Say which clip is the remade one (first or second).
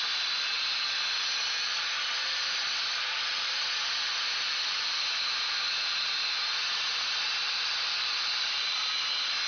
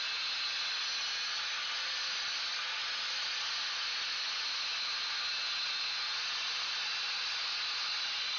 first